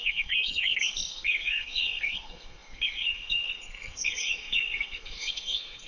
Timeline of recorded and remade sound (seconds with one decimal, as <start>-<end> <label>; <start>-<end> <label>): 0.0-5.9 remade